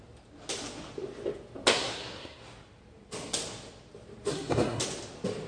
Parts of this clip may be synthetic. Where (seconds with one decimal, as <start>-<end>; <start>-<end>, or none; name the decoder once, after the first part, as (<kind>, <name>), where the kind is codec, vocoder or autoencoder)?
1.7-2.4 (codec, SNAC); 4.3-4.8